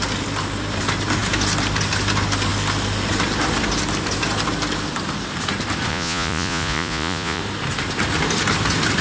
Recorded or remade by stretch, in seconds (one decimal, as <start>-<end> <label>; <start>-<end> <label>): 0.0-5.9 recorded; 5.9-7.4 remade; 7.4-9.0 recorded

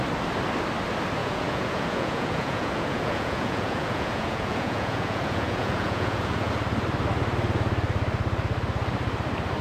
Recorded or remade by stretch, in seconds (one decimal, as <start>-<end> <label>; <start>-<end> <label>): 0.0-1.2 recorded; 1.2-6.5 remade; 6.5-9.6 recorded